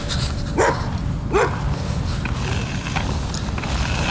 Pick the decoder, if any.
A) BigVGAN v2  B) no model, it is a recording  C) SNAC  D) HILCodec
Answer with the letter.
B